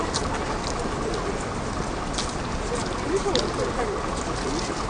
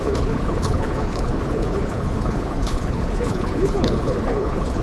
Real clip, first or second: first